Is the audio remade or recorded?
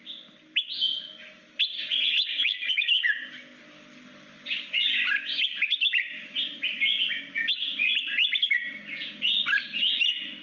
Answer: recorded